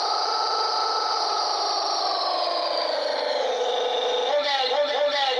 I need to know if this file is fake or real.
real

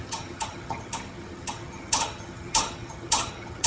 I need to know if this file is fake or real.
fake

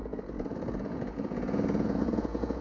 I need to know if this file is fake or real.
fake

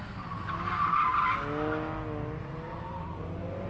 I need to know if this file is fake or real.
real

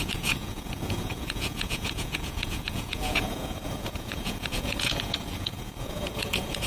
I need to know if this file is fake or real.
fake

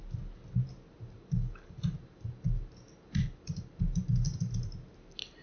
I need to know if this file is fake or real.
real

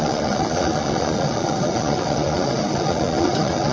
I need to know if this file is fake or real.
fake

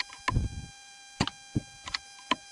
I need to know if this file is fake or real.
real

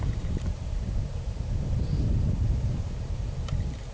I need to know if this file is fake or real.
fake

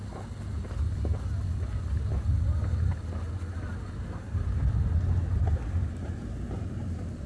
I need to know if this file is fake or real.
real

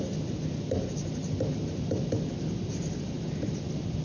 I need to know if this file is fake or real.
real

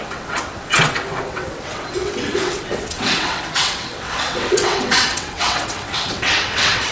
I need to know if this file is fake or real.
fake